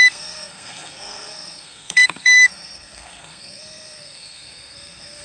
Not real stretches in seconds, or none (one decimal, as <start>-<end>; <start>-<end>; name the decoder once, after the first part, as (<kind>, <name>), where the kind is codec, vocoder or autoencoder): 0.0-5.2 (codec, SNAC)